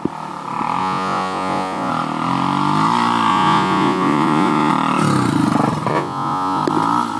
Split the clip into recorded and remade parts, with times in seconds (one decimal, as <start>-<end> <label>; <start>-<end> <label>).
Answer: 0.0-0.8 recorded; 0.8-1.9 remade; 1.9-3.3 recorded; 3.3-4.7 remade; 4.7-5.9 recorded; 5.9-6.6 remade; 6.6-7.2 recorded